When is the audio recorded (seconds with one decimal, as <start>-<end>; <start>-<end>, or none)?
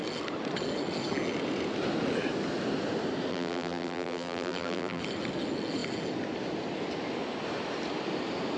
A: 0.0-3.3; 5.0-8.6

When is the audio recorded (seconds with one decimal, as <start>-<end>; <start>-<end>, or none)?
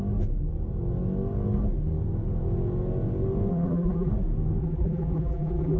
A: 0.0-3.5; 4.1-4.6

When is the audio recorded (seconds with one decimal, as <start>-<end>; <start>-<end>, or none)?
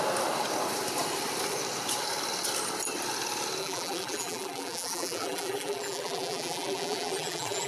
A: 0.0-3.6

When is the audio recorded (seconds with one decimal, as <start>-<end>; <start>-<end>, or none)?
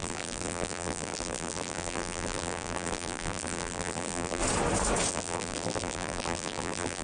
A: 4.4-5.1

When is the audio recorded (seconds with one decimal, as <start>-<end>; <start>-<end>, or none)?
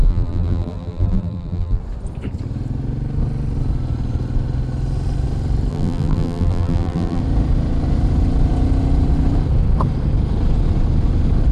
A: 1.8-5.7; 7.2-11.5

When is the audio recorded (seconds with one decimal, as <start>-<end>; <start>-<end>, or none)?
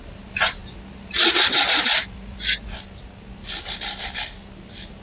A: 0.0-5.0